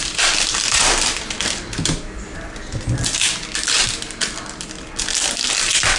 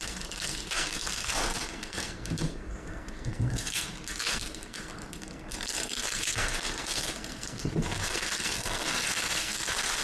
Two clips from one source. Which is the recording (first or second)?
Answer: first